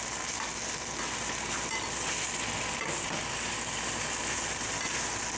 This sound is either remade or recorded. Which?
recorded